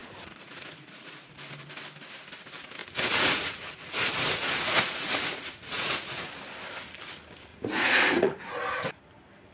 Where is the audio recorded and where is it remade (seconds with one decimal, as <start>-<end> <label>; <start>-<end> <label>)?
0.0-1.3 remade; 1.3-2.8 recorded; 2.8-6.3 remade; 6.3-7.5 recorded; 7.5-8.5 remade; 8.5-9.5 recorded

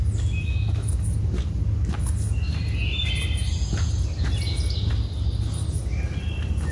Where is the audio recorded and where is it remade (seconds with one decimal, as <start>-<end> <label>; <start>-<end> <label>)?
0.0-6.7 recorded

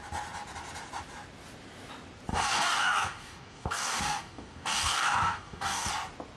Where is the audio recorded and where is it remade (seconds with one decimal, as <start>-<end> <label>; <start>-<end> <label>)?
0.0-2.3 recorded; 2.3-5.9 remade; 5.9-6.4 recorded

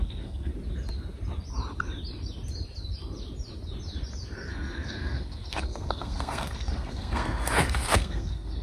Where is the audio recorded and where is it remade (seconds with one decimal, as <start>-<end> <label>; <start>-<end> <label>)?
0.0-0.5 remade; 0.5-4.5 recorded; 4.5-8.6 remade